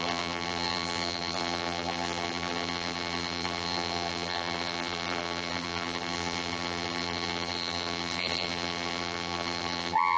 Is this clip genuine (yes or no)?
no